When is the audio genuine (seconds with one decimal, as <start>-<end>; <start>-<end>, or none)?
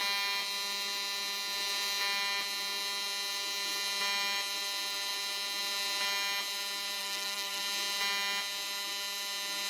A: 0.0-7.0; 7.6-9.7